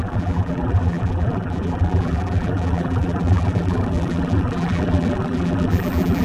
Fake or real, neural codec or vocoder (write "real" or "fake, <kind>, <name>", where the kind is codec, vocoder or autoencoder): fake, vocoder, BigVGAN v2